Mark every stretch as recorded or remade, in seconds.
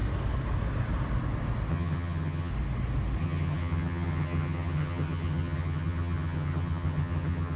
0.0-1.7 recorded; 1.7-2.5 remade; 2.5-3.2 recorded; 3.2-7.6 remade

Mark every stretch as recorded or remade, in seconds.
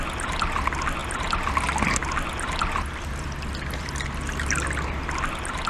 0.0-5.7 recorded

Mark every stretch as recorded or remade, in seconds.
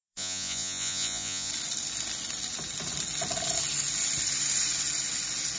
0.0-1.5 remade; 1.5-5.6 recorded